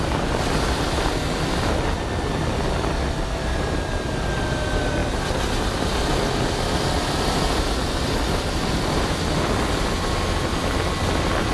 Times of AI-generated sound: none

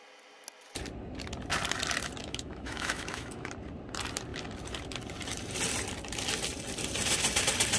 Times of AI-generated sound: 2.2-3.5 (autoencoder, DAC-VAE)

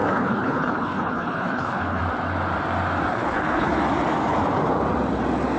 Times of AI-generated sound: 0.0-2.0 (codec, HILCodec); 3.1-3.8

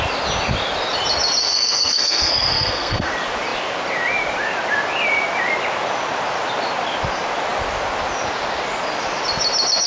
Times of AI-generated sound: 1.4-3.1 (codec, SNAC)